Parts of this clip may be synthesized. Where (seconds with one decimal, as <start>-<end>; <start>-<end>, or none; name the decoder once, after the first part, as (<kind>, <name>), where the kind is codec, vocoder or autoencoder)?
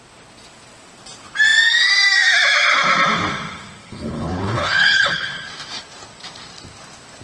3.8-5.3 (codec, HILCodec)